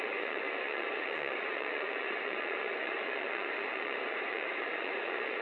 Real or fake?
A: fake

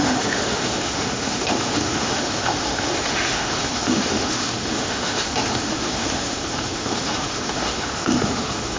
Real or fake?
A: fake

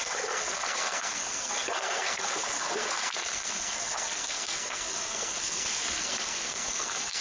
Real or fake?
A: fake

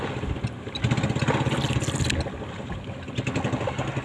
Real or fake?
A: real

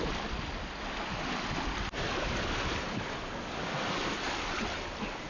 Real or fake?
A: real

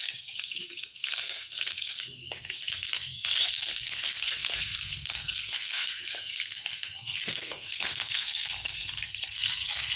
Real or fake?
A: fake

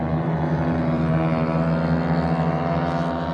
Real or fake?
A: real